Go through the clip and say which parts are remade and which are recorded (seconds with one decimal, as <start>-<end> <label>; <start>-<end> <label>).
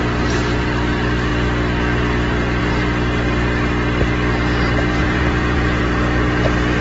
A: 0.0-5.0 recorded; 5.0-5.8 remade; 5.8-6.8 recorded